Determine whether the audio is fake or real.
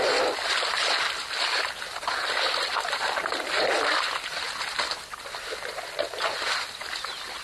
real